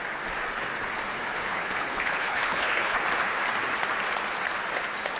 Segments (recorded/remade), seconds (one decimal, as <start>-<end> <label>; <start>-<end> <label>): 0.0-1.1 recorded; 1.1-3.0 remade; 3.0-5.2 recorded